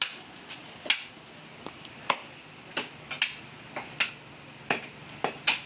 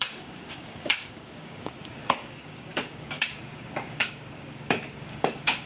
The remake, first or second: second